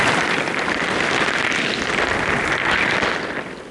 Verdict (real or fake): real